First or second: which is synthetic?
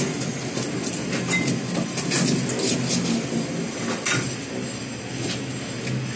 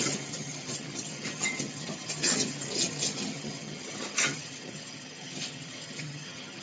second